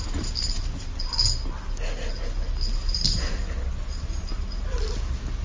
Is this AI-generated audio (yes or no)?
no